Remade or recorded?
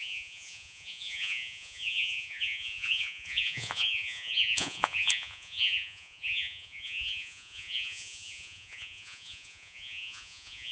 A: remade